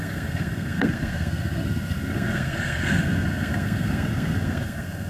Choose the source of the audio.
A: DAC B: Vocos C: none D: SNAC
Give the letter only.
D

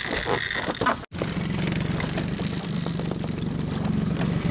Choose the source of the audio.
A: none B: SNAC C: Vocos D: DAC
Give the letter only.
A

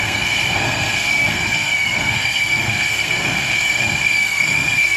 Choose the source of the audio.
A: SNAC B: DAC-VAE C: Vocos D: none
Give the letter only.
A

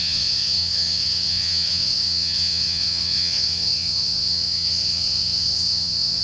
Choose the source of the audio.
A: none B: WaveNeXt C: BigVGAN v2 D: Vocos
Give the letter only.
B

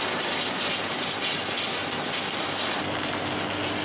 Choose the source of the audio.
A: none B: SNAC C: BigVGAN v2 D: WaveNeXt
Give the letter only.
A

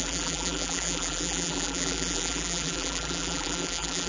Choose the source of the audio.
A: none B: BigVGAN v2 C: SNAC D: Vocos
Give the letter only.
B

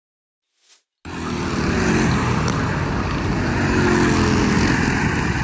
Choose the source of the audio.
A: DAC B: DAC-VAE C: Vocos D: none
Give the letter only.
D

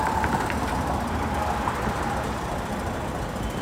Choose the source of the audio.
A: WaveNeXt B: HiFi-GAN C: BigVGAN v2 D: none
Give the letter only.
D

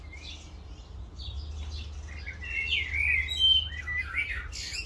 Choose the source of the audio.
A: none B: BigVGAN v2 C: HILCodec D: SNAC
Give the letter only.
A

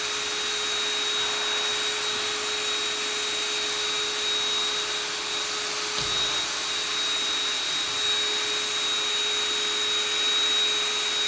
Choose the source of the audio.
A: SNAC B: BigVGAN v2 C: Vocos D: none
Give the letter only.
D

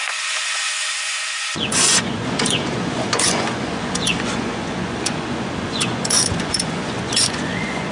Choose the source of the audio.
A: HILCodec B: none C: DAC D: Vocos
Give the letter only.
D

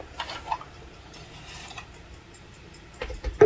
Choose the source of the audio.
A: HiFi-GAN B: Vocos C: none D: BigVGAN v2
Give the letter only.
D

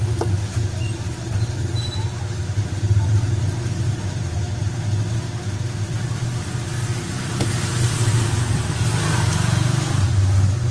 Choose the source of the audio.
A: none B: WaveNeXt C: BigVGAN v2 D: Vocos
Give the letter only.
A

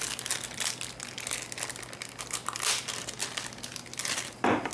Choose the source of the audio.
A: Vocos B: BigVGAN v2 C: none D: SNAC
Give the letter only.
C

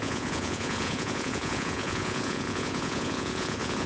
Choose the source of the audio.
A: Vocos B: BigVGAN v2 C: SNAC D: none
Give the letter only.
A